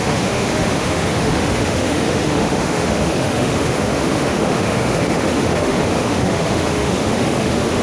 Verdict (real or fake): fake